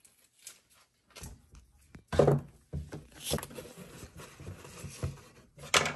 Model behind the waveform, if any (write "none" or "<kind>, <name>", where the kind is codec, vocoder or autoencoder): none